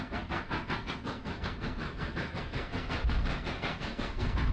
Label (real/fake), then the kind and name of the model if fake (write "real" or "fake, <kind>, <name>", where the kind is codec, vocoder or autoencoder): fake, codec, SNAC